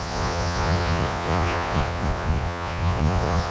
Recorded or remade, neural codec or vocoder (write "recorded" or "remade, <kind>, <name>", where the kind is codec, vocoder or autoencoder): remade, vocoder, Vocos